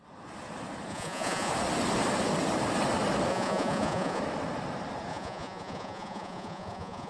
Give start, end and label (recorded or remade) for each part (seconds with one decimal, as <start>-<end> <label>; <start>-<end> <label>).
0.0-0.9 recorded; 0.9-1.5 remade; 1.5-3.3 recorded; 3.3-4.2 remade; 4.2-5.1 recorded; 5.1-7.1 remade